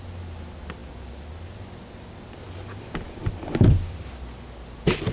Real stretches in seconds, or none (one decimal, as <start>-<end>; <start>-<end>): 0.0-5.1